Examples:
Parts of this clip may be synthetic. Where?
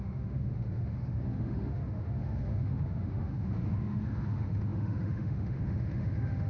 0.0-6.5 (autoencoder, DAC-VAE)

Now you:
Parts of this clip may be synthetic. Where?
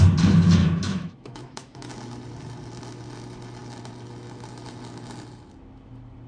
0.6-1.9 (autoencoder, DAC-VAE)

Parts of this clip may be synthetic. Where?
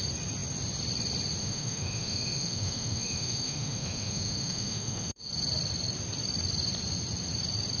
1.4-5.3 (autoencoder, DAC-VAE)